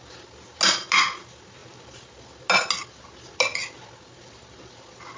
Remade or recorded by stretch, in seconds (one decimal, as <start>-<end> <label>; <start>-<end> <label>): 0.0-5.2 recorded